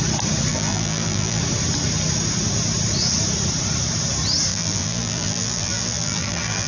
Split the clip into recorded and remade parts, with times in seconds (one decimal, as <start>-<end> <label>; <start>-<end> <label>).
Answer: 0.0-0.5 recorded; 0.5-1.4 remade; 1.4-4.5 recorded; 4.5-6.7 remade